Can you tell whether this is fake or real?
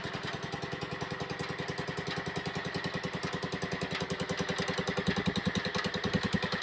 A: real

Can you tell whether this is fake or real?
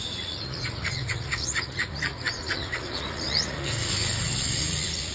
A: fake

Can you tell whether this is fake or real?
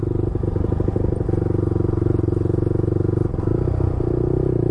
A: real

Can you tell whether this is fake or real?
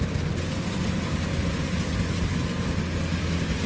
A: real